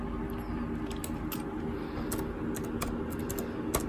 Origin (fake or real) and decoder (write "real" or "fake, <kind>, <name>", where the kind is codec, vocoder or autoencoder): real